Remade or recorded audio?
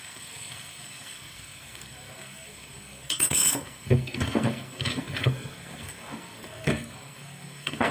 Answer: remade